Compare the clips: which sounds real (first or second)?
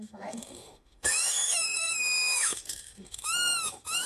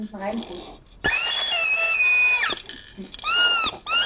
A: second